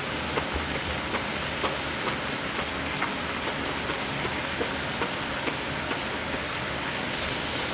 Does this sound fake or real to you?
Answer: real